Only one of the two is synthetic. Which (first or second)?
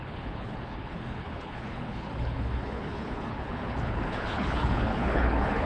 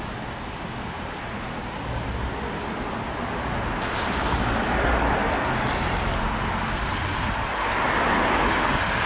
first